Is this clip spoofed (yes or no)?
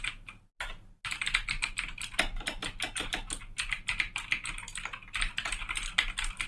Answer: no